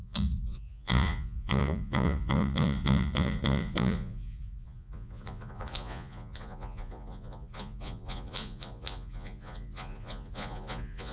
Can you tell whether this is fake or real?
fake